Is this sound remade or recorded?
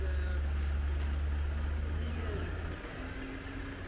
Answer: recorded